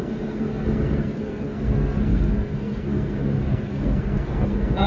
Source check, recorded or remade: remade